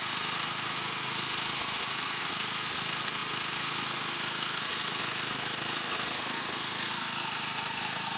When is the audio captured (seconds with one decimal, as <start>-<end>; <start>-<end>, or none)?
none